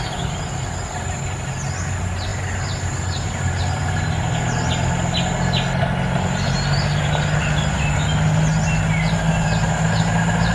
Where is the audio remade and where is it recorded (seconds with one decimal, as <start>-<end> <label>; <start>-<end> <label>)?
0.0-10.5 recorded